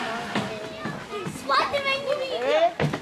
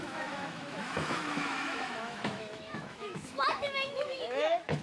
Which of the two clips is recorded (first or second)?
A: first